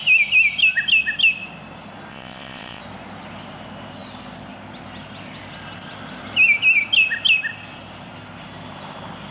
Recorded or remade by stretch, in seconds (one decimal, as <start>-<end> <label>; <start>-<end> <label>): 0.0-2.1 recorded; 2.1-2.8 remade; 2.8-9.3 recorded

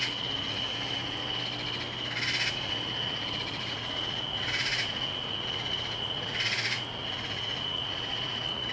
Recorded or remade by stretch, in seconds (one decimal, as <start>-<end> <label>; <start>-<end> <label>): 0.0-1.2 remade; 1.2-2.5 recorded; 2.5-8.7 remade

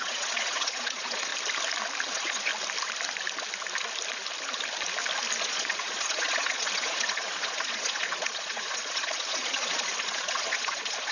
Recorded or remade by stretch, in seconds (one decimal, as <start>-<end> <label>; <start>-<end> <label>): 0.0-1.3 remade; 1.3-2.1 recorded; 2.1-2.5 remade; 2.5-5.4 recorded; 5.4-11.1 remade